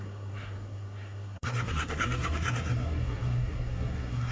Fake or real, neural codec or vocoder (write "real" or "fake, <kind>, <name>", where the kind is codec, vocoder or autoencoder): fake, codec, SNAC